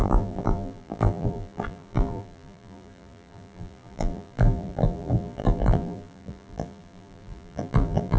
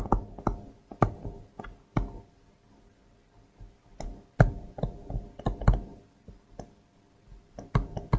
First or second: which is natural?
second